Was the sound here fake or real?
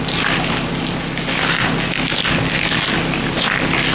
real